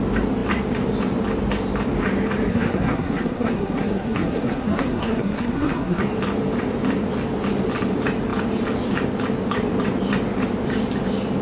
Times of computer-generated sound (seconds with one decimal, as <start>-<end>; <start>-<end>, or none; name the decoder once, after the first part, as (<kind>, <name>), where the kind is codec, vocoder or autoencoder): 2.5-6.0 (codec, SNAC)